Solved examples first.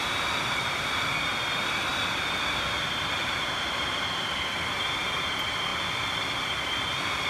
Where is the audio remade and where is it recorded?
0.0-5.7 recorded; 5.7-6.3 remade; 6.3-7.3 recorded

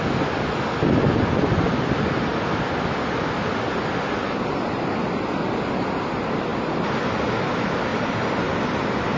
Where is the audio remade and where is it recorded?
0.0-7.9 recorded; 7.9-9.2 remade

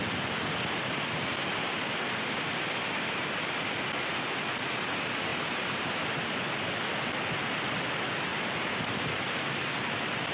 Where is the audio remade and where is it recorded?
0.0-5.3 recorded; 5.3-6.4 remade; 6.4-8.3 recorded; 8.3-9.5 remade; 9.5-10.3 recorded

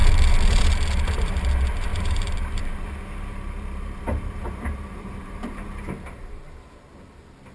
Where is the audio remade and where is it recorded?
0.0-1.9 recorded; 1.9-6.4 remade; 6.4-7.5 recorded